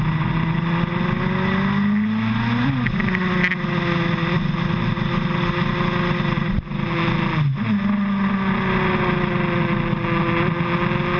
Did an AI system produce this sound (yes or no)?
no